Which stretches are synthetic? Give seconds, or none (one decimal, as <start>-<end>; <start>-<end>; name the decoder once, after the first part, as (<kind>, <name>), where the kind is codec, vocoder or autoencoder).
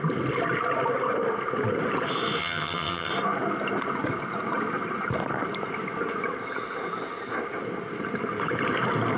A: 2.4-3.1 (vocoder, HiFi-GAN)